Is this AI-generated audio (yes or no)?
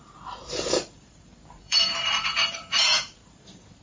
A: yes